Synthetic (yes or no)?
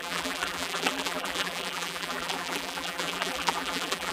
yes